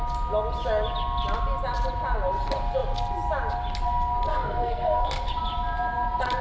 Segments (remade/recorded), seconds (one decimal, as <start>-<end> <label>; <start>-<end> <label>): 0.0-4.3 recorded; 4.3-5.3 remade; 5.3-6.4 recorded